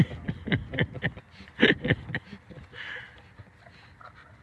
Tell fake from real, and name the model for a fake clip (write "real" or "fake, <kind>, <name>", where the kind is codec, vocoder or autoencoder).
real